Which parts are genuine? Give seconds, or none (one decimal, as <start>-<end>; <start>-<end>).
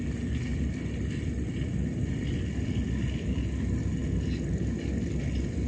0.0-0.5; 3.4-5.7